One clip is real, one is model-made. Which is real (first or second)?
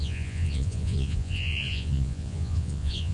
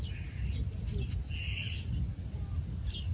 second